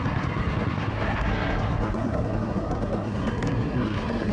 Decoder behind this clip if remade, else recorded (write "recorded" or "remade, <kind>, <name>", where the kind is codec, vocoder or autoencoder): remade, codec, SNAC